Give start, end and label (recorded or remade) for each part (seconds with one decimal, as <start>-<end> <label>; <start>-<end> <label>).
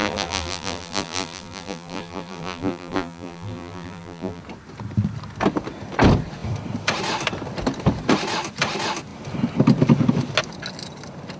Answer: 0.0-4.4 remade; 4.4-11.4 recorded